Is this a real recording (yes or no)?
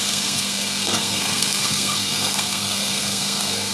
no